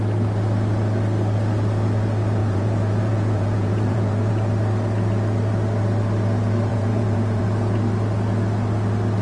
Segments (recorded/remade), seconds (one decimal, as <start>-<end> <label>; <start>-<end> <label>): 0.0-2.4 recorded; 2.4-4.3 remade; 4.3-6.7 recorded; 6.7-7.4 remade; 7.4-9.2 recorded

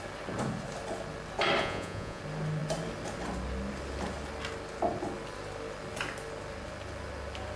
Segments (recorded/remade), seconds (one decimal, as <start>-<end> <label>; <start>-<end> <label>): 0.0-1.6 recorded; 1.6-2.2 remade; 2.2-7.6 recorded

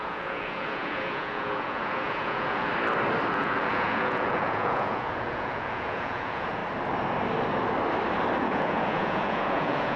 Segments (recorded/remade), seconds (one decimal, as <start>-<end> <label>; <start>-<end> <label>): 0.0-2.7 remade; 2.7-3.3 recorded; 3.3-6.6 remade; 6.6-8.4 recorded; 8.4-10.0 remade

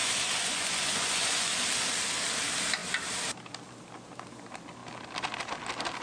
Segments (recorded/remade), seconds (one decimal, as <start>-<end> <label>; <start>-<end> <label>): 0.0-1.6 remade; 1.6-6.0 recorded